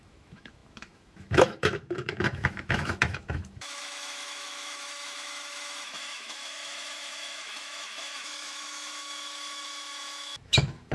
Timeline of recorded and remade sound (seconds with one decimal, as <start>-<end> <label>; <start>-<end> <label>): 0.0-10.9 remade